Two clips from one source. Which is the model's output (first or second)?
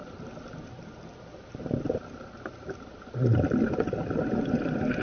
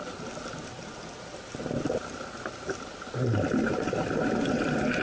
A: first